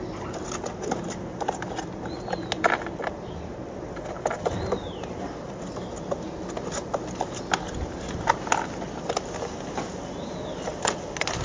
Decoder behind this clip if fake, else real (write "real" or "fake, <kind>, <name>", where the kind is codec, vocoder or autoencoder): real